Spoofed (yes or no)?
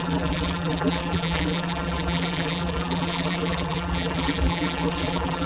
yes